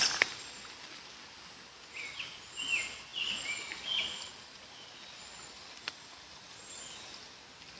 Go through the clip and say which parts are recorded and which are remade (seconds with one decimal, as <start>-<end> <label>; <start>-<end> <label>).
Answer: 0.0-7.8 recorded